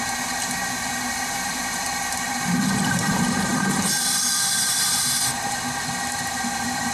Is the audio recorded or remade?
remade